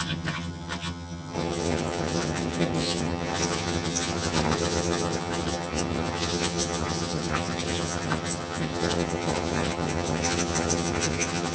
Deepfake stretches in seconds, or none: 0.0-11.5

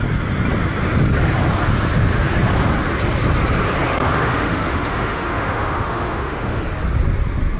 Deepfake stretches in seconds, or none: 3.9-6.6

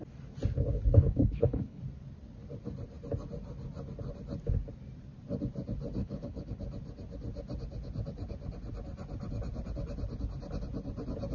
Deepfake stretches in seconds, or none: 0.9-1.8; 6.0-6.6

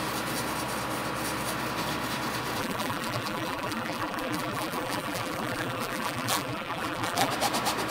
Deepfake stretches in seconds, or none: 2.6-7.3